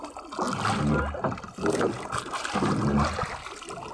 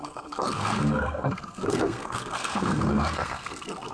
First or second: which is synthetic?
second